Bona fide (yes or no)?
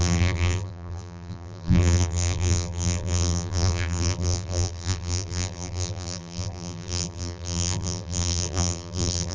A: no